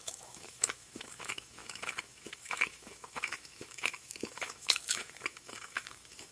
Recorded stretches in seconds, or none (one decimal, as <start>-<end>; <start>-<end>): none